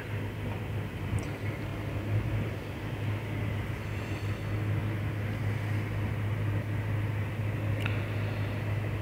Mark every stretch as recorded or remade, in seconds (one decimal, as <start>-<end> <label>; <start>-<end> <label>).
0.0-9.0 recorded